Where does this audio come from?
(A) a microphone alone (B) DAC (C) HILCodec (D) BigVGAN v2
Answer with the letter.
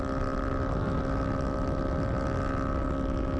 A